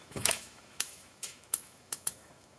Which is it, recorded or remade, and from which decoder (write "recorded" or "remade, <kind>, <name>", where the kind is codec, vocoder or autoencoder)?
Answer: remade, autoencoder, DAC-VAE